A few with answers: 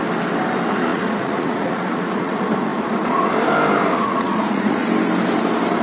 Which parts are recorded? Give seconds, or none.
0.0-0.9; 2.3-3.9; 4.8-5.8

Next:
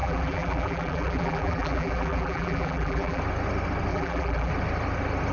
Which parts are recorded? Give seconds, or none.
3.2-3.9; 4.5-5.3

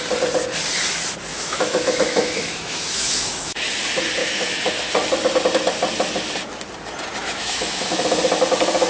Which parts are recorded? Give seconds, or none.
0.0-1.3; 3.7-4.2; 4.7-7.2; 8.2-8.9

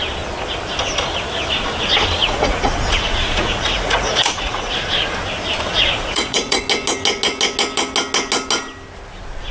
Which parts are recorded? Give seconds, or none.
0.0-2.2; 4.7-5.7; 6.6-9.5

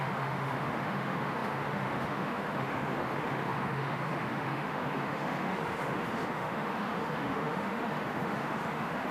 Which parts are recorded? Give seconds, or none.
none

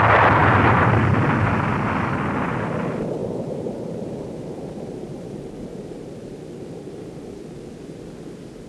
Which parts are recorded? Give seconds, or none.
0.0-0.4; 1.0-3.2; 7.2-8.7

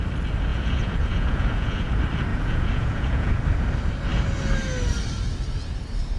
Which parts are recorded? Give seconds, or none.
0.0-0.5; 1.9-2.3; 3.3-6.2